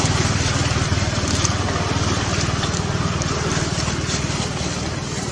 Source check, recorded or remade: remade